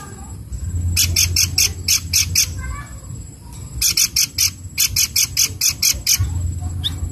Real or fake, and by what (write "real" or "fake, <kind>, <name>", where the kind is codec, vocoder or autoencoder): real